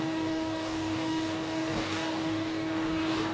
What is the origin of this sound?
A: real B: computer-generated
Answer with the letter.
B